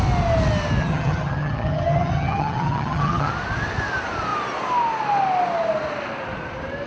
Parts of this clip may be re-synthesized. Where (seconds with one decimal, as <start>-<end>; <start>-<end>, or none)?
0.8-3.3